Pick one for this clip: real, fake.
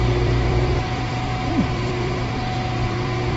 fake